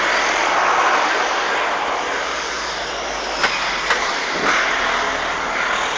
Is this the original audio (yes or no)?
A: yes